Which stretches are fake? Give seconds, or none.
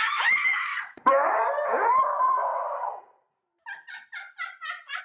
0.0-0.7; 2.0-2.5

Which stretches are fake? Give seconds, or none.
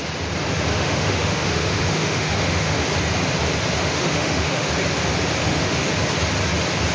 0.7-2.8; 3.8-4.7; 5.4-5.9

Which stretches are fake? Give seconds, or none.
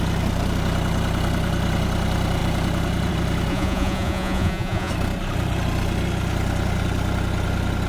3.5-4.9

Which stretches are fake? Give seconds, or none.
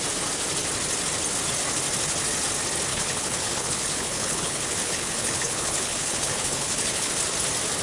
2.9-7.1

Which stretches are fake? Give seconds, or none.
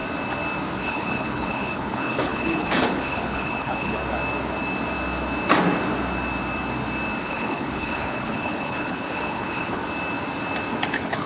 0.8-4.0; 7.2-9.8; 10.9-11.3